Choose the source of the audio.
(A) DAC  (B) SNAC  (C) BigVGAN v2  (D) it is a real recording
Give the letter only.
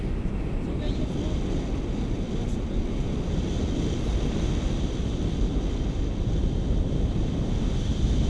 D